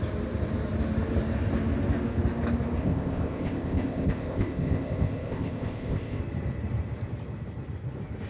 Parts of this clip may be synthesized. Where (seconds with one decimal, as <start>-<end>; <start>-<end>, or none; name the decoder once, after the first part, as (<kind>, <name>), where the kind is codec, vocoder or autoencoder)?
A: 2.8-6.2 (codec, ZipCodec)